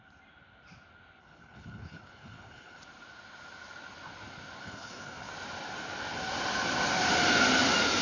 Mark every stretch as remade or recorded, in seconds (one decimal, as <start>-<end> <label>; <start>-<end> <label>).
0.0-1.2 recorded; 1.2-2.8 remade; 2.8-4.6 recorded; 4.6-5.3 remade; 5.3-8.0 recorded